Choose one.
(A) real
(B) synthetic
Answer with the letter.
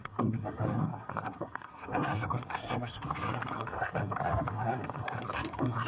B